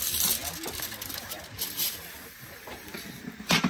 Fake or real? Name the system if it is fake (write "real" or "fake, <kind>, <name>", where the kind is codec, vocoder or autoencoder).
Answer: real